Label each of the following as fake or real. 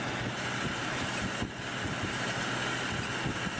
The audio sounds real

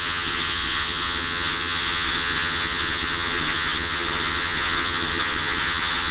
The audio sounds fake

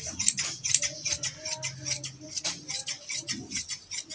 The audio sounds real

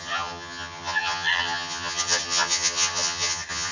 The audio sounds fake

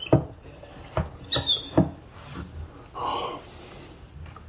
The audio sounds real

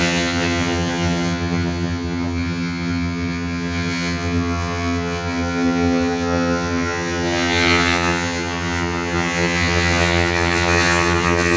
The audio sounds fake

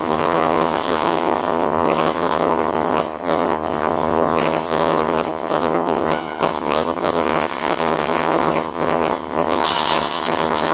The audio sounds fake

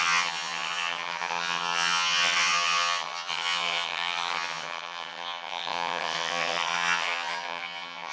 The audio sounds fake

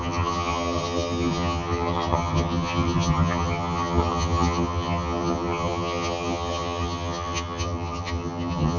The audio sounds fake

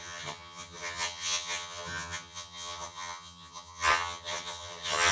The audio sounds fake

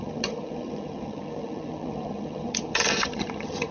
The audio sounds fake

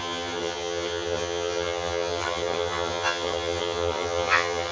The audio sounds fake